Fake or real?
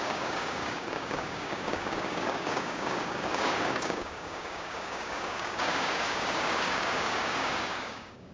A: fake